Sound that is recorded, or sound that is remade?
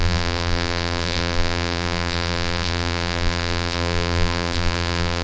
remade